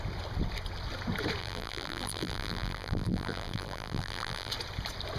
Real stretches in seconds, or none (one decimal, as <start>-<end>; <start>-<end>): 0.0-1.4; 4.5-5.2